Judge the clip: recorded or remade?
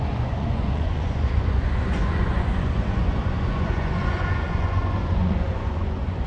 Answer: remade